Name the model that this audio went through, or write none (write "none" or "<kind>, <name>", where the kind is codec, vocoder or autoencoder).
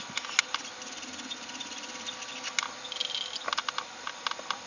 none